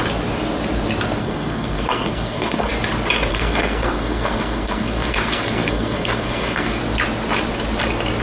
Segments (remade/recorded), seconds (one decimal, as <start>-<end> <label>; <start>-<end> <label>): 0.0-1.2 recorded; 1.2-2.7 remade; 2.7-3.3 recorded; 3.3-6.8 remade; 6.8-8.2 recorded